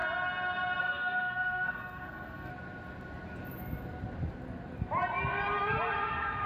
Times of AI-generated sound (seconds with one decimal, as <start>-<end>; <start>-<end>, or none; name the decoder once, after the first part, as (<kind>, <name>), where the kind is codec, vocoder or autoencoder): 0.8-2.5 (codec, SNAC)